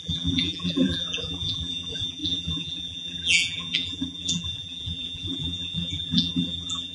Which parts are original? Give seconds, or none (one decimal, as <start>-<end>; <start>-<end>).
none